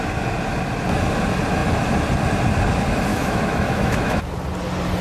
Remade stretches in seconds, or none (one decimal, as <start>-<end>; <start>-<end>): 3.1-4.2